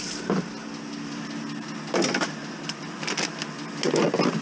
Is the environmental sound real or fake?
real